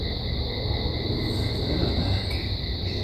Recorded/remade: recorded